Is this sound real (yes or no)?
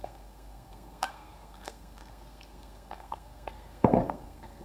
no